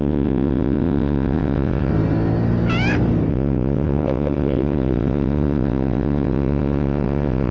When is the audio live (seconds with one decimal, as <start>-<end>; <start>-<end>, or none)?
1.9-3.3